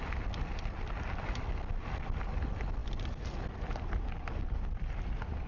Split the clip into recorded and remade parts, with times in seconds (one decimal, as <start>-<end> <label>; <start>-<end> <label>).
0.0-5.5 recorded